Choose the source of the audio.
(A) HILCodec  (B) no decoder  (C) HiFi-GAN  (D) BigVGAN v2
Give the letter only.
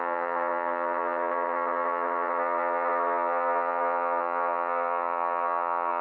C